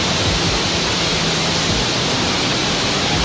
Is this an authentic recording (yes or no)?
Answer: yes